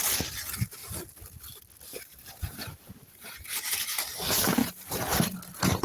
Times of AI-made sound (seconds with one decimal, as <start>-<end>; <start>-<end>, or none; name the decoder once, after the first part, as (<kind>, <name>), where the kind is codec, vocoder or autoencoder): 2.1-4.1 (vocoder, BigVGAN v2); 4.6-5.8